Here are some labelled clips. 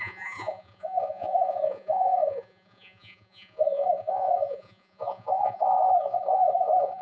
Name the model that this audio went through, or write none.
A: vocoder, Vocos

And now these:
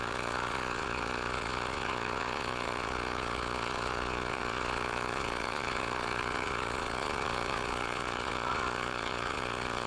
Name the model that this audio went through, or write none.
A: vocoder, Vocos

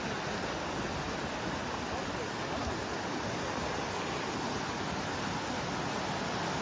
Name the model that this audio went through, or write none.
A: none